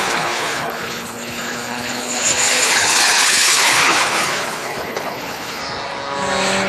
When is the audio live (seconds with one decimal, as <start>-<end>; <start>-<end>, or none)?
5.6-6.7